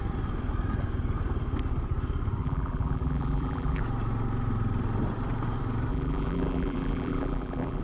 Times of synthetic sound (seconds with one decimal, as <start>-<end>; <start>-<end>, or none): 2.4-3.8; 5.9-7.8

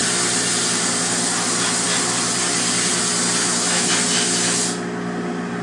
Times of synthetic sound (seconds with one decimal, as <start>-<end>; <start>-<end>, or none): 3.4-3.9

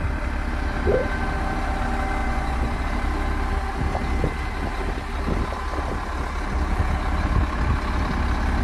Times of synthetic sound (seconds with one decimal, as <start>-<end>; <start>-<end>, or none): 2.2-2.8

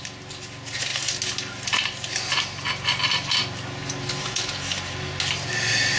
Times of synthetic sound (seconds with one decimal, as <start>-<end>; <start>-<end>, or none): none

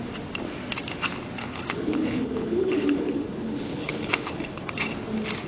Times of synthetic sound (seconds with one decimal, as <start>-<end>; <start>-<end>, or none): 1.4-4.7

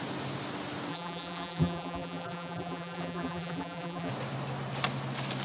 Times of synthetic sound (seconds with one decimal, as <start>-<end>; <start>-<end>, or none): 0.9-4.1

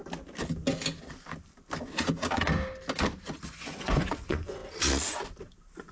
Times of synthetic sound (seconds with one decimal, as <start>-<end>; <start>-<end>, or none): 3.5-4.6

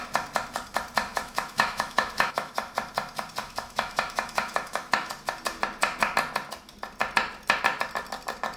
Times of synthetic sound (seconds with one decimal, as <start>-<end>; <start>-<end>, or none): 1.1-2.5; 3.4-5.1